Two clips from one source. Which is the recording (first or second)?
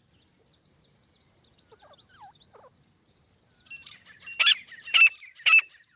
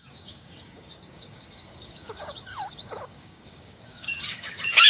first